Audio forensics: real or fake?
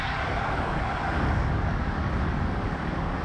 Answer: fake